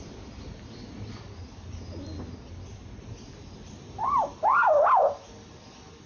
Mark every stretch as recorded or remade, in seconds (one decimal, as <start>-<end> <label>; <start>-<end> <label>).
0.0-6.1 recorded